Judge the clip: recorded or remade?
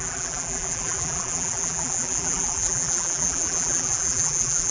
remade